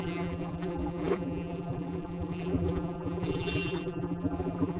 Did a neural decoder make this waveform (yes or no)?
yes